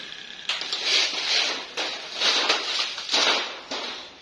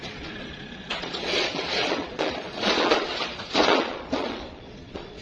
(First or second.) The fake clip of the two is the second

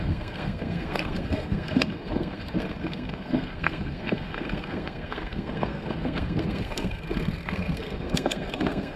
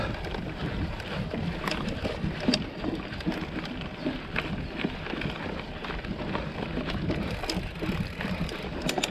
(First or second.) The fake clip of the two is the first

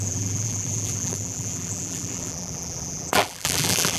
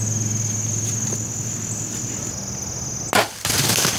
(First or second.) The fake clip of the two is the first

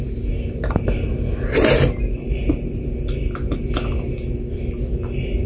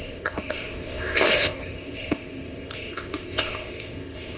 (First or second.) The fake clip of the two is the second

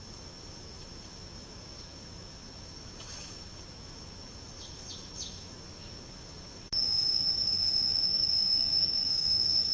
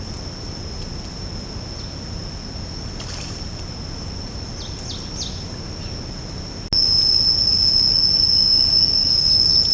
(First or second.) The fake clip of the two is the first